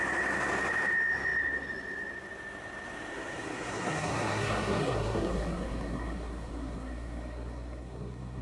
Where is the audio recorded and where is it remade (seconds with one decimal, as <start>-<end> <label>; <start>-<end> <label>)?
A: 0.0-3.1 recorded; 3.1-8.4 remade